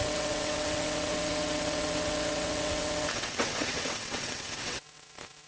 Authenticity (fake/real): fake